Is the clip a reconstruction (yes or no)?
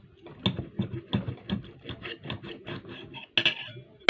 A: no